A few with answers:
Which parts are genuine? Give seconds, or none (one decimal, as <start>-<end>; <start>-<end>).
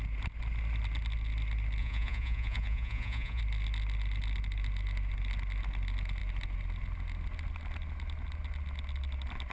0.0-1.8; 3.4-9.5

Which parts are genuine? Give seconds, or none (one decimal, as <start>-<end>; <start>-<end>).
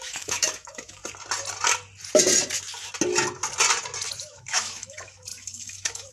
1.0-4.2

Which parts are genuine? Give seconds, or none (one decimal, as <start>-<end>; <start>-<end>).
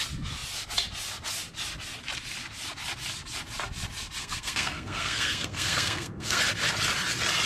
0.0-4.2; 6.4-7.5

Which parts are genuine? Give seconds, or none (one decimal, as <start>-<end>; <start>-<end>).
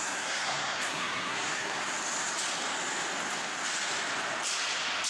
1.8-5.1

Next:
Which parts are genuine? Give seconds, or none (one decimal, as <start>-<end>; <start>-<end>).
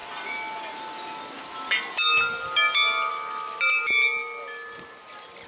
0.0-5.5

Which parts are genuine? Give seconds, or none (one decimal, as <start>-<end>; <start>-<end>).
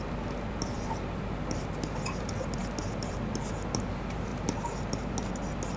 0.0-5.8